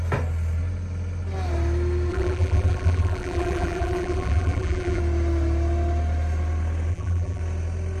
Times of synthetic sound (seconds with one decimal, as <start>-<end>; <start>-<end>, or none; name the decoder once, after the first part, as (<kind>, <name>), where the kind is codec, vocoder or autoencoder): 2.1-5.0 (vocoder, BigVGAN v2); 6.9-7.4